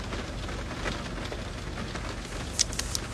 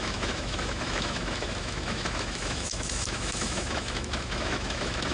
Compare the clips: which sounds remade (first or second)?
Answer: second